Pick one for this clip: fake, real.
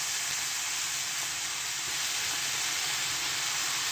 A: real